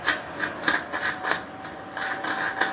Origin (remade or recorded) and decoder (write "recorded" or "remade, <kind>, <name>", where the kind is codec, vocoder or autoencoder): recorded